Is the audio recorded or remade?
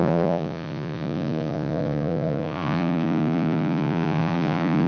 remade